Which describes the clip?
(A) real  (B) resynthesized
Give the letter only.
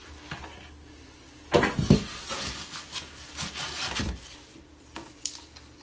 A